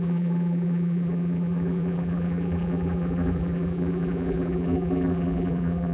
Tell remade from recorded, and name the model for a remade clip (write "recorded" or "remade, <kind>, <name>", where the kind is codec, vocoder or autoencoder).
remade, vocoder, BigVGAN v2